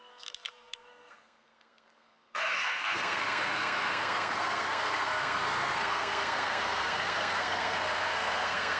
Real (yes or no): no